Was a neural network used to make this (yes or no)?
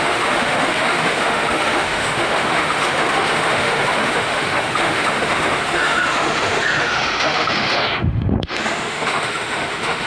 yes